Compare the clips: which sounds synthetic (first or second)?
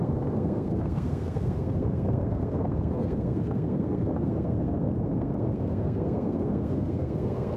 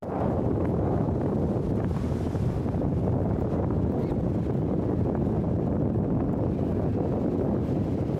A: first